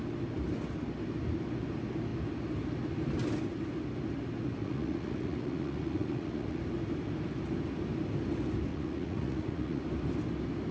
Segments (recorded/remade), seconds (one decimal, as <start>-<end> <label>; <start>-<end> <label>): 0.0-4.6 recorded; 4.6-6.6 remade; 6.6-8.7 recorded; 8.7-9.8 remade; 9.8-10.7 recorded